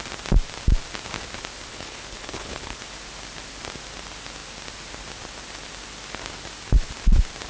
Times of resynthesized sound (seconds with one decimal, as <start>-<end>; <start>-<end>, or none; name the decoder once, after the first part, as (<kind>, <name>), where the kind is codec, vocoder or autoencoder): 1.7-2.8 (codec, HILCodec)